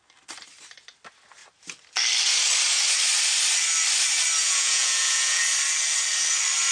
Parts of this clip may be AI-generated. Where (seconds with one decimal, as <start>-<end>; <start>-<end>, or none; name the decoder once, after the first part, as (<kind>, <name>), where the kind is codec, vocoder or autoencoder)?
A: 4.4-5.4 (vocoder, Vocos)